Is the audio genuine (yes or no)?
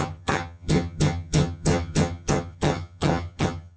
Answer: no